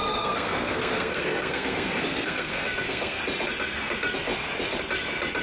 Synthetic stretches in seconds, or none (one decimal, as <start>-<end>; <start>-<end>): 0.0-3.2